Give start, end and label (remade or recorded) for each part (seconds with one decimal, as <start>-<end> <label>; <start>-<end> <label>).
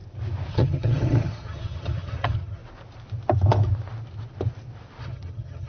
0.0-0.5 recorded; 0.5-2.6 remade; 2.6-5.0 recorded; 5.0-5.7 remade